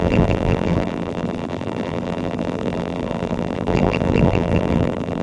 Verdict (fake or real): fake